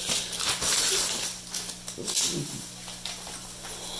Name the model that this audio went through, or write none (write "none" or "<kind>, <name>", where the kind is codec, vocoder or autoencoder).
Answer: none